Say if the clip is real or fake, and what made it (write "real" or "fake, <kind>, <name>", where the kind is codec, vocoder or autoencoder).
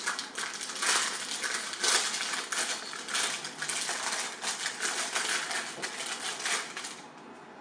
real